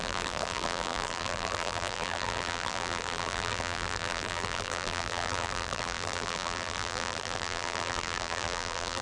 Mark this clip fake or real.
fake